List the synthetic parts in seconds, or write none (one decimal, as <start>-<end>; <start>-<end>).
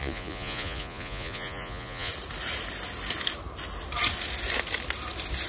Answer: 0.0-2.1